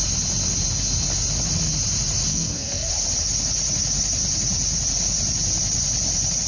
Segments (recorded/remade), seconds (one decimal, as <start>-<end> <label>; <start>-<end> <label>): 0.0-2.3 recorded; 2.3-2.9 remade; 2.9-6.5 recorded